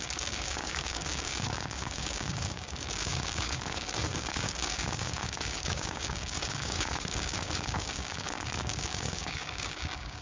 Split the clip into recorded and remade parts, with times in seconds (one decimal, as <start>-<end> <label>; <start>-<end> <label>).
0.0-10.2 remade